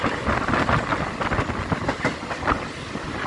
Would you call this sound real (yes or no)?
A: yes